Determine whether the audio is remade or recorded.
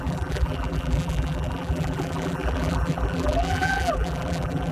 remade